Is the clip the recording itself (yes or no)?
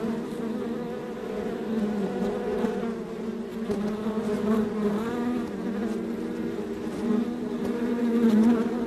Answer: yes